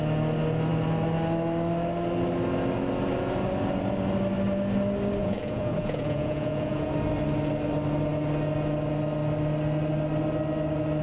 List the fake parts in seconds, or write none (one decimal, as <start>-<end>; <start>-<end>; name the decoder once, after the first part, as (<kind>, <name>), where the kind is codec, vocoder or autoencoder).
5.2-6.9 (vocoder, Vocos)